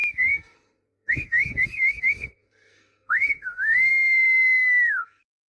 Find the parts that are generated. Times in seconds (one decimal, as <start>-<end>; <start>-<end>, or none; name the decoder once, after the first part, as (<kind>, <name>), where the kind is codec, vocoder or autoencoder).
0.0-5.5 (codec, SNAC)